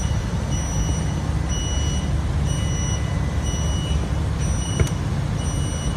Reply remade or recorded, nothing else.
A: recorded